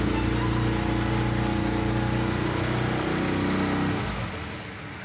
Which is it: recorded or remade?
recorded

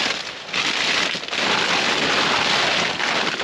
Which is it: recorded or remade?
recorded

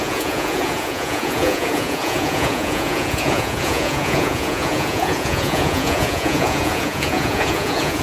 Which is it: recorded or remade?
remade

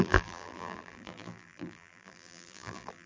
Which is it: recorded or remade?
remade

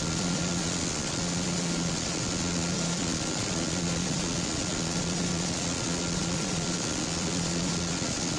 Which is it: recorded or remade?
remade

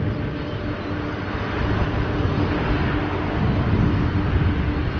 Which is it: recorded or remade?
recorded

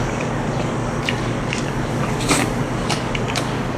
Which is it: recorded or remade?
remade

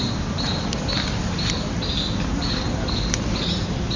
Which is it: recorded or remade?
recorded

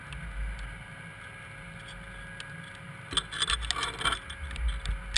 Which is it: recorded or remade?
recorded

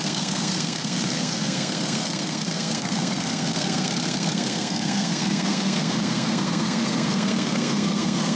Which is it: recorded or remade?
remade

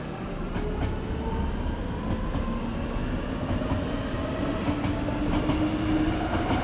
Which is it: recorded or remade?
recorded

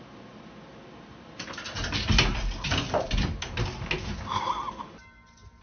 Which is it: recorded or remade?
recorded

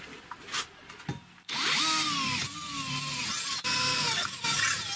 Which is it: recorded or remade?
recorded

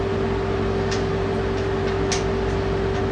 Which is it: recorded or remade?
recorded